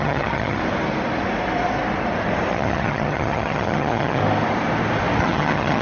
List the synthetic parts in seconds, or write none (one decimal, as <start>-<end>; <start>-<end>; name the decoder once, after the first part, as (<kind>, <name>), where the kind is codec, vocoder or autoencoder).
0.0-0.6 (vocoder, HiFi-GAN); 2.5-4.2; 5.2-5.8